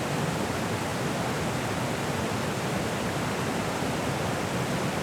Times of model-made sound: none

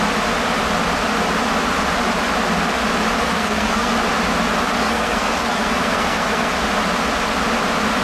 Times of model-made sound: 3.2-3.9 (codec, SNAC); 4.8-6.5

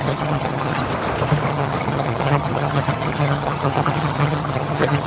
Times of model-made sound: 0.0-0.8 (vocoder, HiFi-GAN); 1.5-5.1

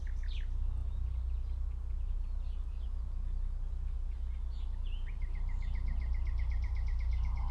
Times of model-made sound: none